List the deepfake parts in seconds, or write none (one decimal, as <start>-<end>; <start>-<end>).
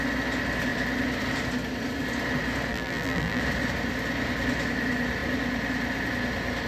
2.7-3.4